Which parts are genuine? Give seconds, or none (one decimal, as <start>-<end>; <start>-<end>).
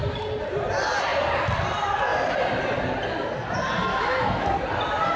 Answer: 0.0-3.9; 4.5-5.2